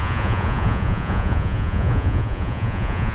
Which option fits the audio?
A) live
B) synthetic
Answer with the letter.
B